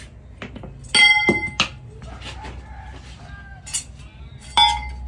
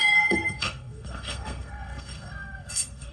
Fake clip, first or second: second